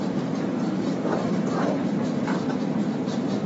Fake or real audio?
fake